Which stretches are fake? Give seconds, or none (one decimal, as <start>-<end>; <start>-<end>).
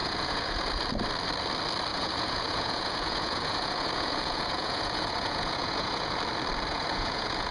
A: 0.0-0.8; 1.9-6.2; 6.7-7.5